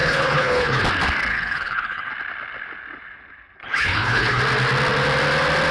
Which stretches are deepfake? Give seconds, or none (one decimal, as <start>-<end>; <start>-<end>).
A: 0.0-0.8; 1.3-2.1; 3.6-4.4